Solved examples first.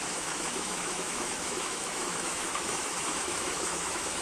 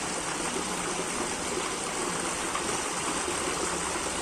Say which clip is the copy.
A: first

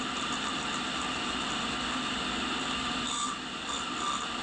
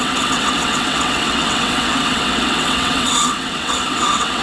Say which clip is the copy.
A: second